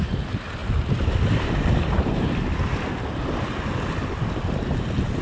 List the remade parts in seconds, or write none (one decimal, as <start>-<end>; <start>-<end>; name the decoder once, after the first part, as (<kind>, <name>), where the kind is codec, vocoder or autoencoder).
none